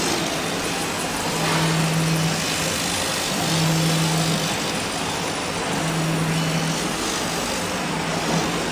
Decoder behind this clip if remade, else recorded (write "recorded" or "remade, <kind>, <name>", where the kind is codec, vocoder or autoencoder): recorded